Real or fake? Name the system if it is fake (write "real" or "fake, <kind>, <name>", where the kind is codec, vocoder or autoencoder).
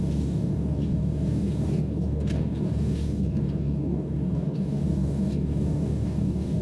fake, codec, DAC